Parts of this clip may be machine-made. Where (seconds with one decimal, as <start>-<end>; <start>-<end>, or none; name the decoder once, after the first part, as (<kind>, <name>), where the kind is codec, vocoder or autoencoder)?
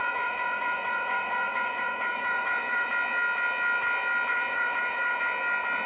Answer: 0.0-2.9 (vocoder, Vocos); 4.3-5.2